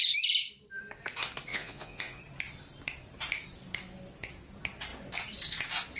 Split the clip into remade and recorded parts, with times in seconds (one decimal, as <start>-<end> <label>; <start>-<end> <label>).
0.0-1.5 recorded; 1.5-2.2 remade; 2.2-6.0 recorded